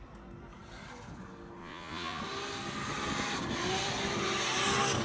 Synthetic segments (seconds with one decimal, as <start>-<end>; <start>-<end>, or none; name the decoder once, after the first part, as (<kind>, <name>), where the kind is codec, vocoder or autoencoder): 1.6-2.2 (vocoder, Vocos)